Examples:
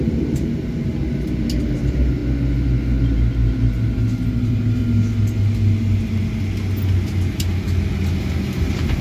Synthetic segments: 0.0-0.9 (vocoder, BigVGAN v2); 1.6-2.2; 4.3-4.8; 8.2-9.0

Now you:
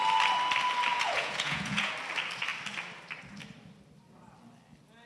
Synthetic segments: 0.9-1.9 (vocoder, Vocos)

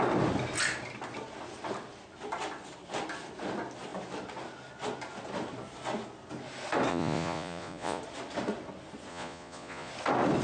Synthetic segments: 6.9-8.0 (vocoder, Vocos); 9.1-9.9

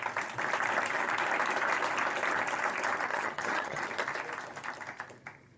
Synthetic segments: 3.1-3.8 (vocoder, HiFi-GAN)

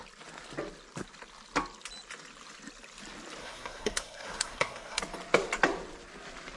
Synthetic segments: 3.4-5.0 (codec, SNAC)

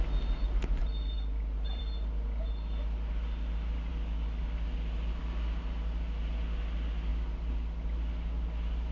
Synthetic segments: none

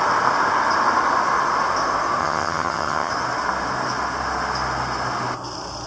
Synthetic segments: 2.2-3.1 (vocoder, HiFi-GAN)